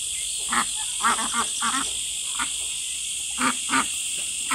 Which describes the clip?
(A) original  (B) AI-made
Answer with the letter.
A